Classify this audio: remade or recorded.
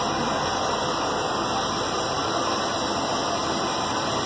recorded